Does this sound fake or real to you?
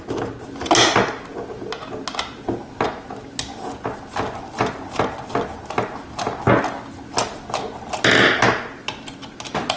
real